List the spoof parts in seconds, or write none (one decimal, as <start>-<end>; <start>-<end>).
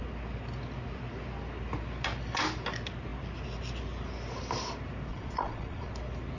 5.1-5.9